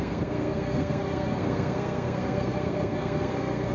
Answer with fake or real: fake